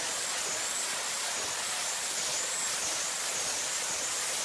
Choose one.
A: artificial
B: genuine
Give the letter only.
B